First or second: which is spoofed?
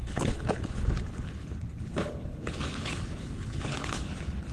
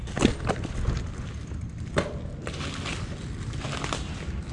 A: first